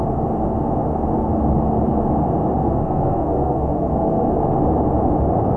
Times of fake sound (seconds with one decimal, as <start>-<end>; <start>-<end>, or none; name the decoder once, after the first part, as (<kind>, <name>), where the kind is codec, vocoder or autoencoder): 2.6-4.3 (codec, SNAC)